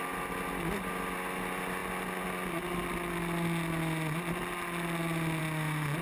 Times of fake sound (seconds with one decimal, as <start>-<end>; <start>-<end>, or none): none